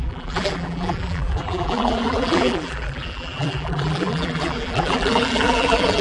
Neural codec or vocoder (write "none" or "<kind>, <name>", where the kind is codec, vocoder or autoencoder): vocoder, BigVGAN v2